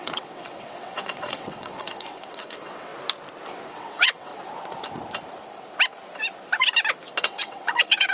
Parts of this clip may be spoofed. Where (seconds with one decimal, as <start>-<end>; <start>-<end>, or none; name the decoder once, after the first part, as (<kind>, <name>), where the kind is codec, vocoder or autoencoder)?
0.0-2.9 (vocoder, WaveNeXt); 3.7-4.3; 7.2-8.1